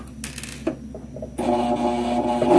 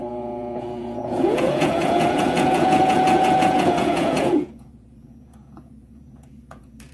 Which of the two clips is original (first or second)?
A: first